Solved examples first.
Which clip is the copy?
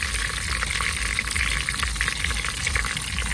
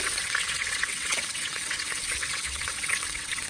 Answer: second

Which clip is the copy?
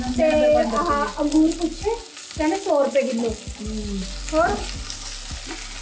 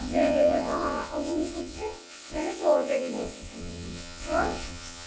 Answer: second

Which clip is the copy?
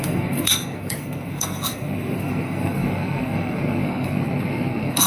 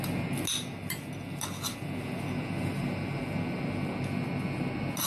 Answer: first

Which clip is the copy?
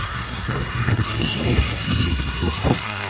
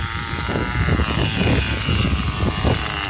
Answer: first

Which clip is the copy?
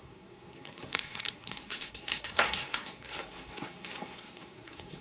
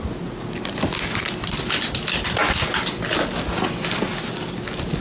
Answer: first